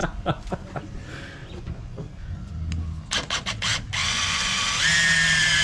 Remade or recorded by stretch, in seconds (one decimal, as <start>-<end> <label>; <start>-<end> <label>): 0.0-0.9 remade; 0.9-1.4 recorded; 1.4-2.5 remade; 2.5-4.0 recorded; 4.0-4.6 remade; 4.6-5.6 recorded